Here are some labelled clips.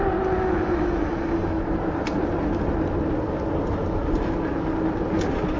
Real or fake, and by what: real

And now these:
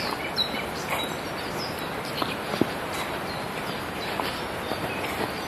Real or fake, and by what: real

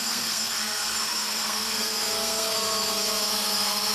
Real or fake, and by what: fake, codec, SNAC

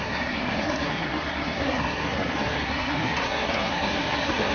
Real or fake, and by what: fake, codec, SNAC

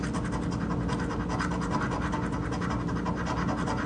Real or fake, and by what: real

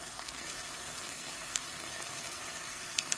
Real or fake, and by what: fake, codec, SNAC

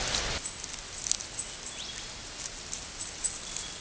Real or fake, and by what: real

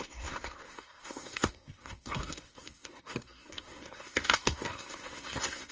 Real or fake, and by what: fake, codec, SNAC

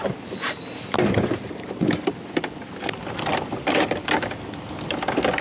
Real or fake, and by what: real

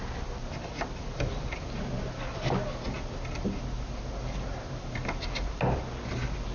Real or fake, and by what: real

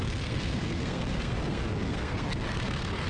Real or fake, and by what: fake, codec, SNAC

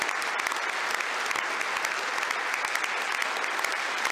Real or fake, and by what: real